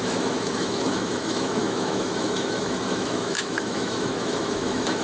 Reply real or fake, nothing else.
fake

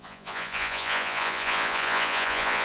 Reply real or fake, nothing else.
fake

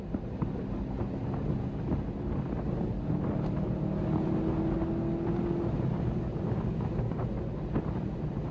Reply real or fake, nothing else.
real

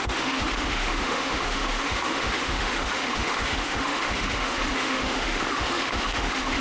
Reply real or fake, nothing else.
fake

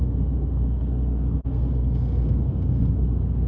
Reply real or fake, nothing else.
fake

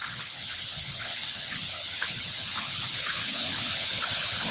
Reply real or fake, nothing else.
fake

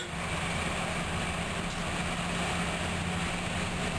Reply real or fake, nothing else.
real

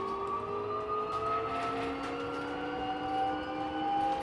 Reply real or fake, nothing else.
real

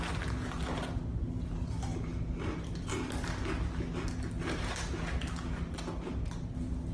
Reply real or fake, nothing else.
real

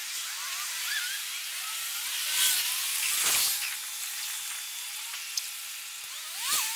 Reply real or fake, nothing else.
real